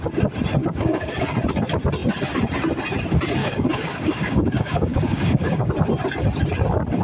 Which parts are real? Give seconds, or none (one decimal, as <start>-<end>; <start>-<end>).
0.0-0.6; 1.2-3.4; 5.7-7.0